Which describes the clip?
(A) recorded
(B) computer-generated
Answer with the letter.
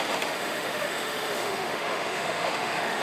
B